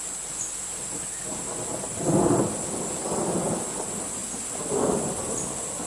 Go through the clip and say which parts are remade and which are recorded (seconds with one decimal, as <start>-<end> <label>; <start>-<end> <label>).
0.0-5.9 recorded